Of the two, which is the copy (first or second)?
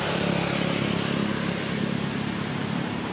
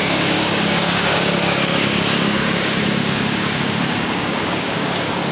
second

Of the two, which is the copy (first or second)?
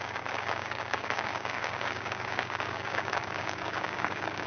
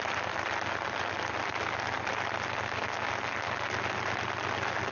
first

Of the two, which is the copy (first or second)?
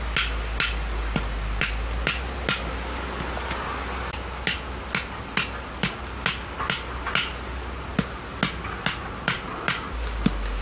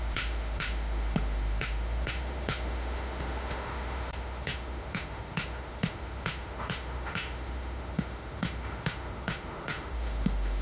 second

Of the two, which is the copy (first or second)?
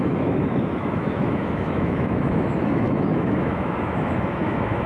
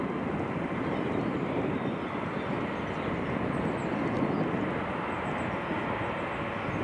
first